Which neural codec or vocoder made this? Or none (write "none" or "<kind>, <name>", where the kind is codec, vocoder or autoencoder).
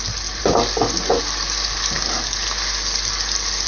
none